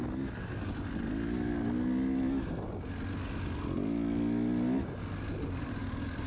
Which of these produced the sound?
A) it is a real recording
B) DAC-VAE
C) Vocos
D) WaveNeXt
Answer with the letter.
A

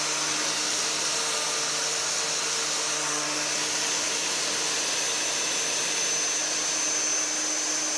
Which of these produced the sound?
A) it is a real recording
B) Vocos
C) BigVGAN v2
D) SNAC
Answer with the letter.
A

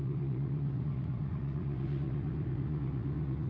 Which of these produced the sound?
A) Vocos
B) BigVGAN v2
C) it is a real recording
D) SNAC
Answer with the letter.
A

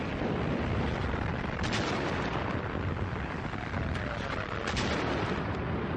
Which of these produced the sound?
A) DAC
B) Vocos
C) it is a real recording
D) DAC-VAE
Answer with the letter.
C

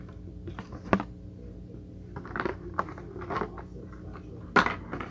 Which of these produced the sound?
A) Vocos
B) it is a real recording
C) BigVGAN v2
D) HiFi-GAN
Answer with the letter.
B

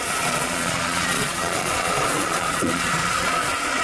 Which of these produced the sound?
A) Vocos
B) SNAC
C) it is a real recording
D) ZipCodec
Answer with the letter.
A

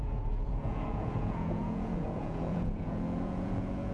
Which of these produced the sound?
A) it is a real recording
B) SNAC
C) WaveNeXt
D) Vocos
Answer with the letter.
D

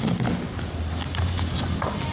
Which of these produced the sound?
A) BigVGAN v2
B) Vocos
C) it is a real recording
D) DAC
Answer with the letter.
C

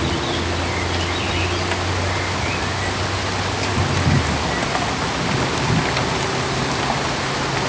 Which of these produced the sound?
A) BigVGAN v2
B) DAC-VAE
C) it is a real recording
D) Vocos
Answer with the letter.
C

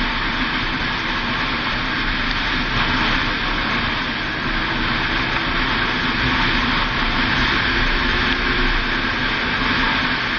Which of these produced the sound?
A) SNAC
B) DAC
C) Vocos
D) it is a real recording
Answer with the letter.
D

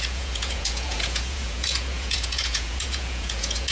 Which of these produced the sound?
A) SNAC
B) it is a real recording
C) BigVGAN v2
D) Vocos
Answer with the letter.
D